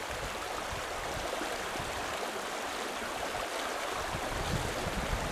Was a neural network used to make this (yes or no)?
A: no